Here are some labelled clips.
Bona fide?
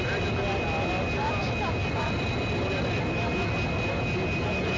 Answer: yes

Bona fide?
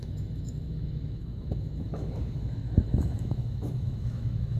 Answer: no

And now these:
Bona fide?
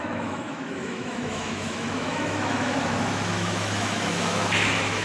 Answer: no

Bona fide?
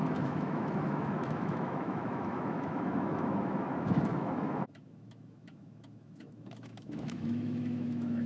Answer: no